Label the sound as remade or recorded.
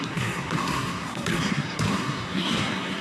remade